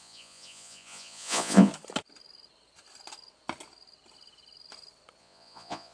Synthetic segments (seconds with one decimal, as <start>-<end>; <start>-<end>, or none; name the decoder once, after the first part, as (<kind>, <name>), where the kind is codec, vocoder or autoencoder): 0.0-1.7 (vocoder, Vocos); 5.2-5.9